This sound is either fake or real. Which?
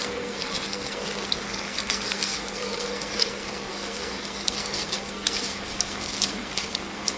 fake